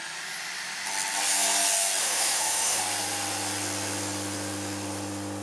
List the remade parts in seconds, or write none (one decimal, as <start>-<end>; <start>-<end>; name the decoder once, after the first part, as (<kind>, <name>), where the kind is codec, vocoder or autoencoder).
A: 2.0-2.8 (autoencoder, DAC-VAE)

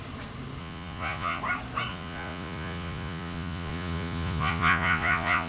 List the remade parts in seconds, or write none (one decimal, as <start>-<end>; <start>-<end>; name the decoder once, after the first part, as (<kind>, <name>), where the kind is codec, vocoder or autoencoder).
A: 0.6-1.4 (vocoder, Vocos); 1.9-5.5

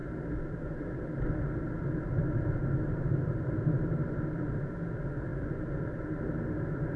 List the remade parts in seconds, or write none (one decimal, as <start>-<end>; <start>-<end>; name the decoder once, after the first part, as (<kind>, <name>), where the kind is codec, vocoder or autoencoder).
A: 5.3-6.2 (vocoder, BigVGAN v2)

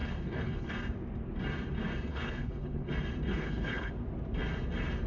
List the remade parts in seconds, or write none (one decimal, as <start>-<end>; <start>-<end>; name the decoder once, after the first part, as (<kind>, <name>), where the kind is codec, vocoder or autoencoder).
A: 0.0-0.7 (codec, HILCodec); 2.1-2.9; 3.3-3.9

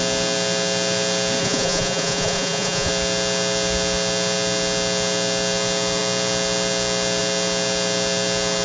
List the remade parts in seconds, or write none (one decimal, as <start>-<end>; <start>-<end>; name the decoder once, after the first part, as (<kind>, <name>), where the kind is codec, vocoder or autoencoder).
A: 1.4-2.9 (vocoder, Vocos)